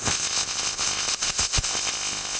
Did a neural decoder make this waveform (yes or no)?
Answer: yes